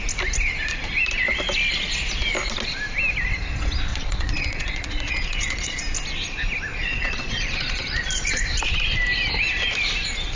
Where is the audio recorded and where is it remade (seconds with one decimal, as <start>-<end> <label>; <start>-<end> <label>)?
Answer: 0.0-3.9 recorded; 3.9-5.8 remade; 5.8-6.7 recorded; 6.7-8.3 remade; 8.3-10.3 recorded